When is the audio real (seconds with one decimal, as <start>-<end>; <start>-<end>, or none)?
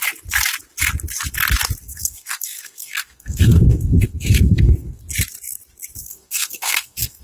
0.0-1.8; 5.0-6.0